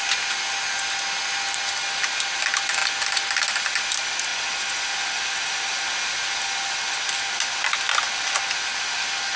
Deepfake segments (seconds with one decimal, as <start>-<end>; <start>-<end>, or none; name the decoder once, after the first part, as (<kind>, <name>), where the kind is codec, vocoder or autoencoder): none